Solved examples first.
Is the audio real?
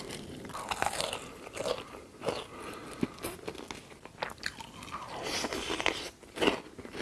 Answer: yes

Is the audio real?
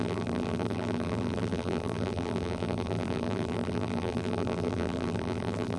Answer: no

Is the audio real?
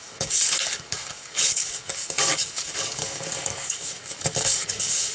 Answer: no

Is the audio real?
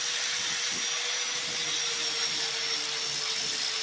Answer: yes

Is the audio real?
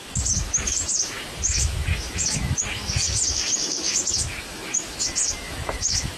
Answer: no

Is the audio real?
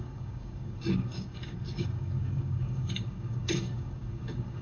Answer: no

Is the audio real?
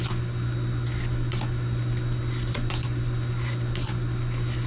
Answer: yes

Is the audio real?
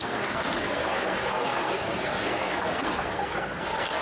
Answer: no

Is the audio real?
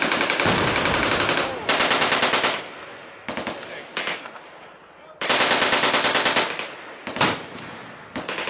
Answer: yes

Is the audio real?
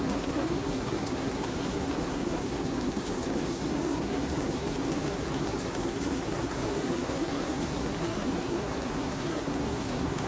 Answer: no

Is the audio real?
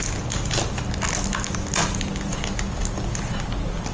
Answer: yes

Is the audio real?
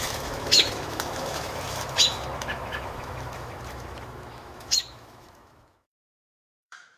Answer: no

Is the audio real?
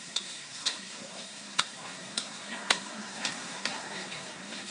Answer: no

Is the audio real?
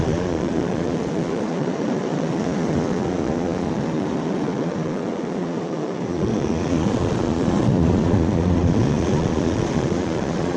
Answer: no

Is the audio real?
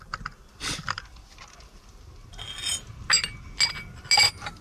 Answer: yes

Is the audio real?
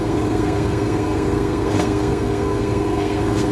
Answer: no